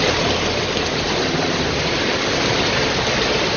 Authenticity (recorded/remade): recorded